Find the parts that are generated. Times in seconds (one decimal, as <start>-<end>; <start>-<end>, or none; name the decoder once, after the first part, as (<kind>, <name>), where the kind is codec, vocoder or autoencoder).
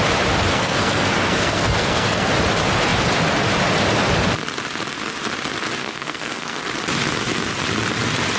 0.5-2.3 (codec, SNAC); 5.8-6.6